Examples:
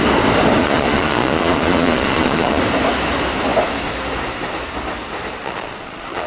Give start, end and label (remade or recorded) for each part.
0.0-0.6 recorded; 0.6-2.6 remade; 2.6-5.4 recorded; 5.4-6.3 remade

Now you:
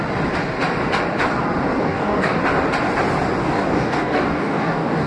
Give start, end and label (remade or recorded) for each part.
0.0-1.8 recorded; 1.8-2.4 remade; 2.4-3.4 recorded; 3.4-5.1 remade

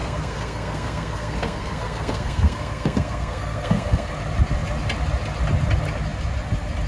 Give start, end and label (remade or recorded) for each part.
0.0-4.1 remade; 4.1-6.9 recorded

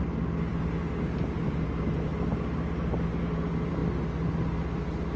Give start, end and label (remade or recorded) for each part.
0.0-5.2 recorded

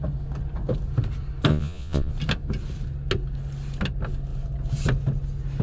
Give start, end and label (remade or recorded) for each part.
0.0-1.5 recorded; 1.5-2.1 remade; 2.1-5.6 recorded